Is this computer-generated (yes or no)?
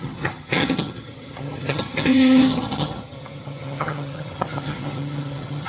yes